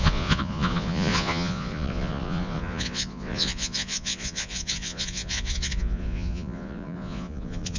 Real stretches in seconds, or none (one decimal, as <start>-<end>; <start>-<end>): none